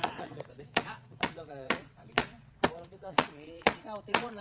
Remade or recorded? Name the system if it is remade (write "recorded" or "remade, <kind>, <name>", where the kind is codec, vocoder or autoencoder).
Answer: remade, vocoder, Vocos